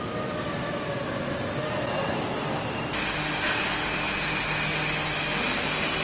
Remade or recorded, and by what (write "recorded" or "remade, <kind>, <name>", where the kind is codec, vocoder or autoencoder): recorded